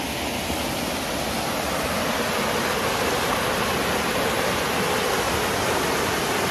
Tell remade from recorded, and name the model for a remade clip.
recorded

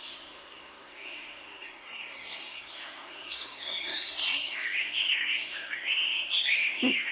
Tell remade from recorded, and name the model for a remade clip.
remade, codec, SNAC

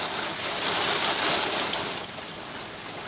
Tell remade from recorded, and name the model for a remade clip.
recorded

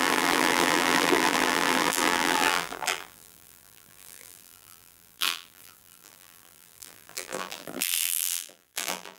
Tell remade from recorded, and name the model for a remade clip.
remade, vocoder, BigVGAN v2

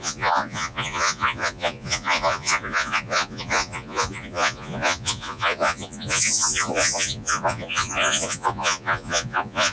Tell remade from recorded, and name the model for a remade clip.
remade, vocoder, Vocos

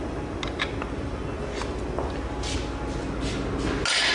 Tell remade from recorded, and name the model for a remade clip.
recorded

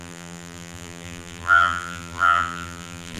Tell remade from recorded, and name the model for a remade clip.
remade, vocoder, BigVGAN v2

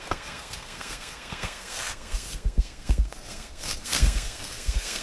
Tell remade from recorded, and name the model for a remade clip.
remade, codec, SNAC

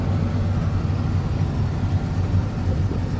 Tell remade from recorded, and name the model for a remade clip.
recorded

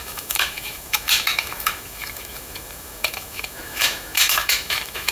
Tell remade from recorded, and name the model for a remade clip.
remade, autoencoder, DAC-VAE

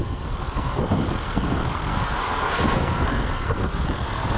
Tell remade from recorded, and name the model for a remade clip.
remade, codec, SNAC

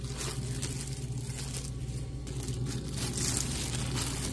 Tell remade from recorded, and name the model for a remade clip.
recorded